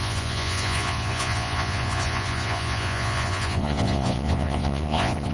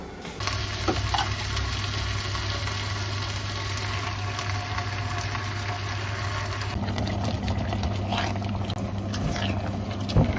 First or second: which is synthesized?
first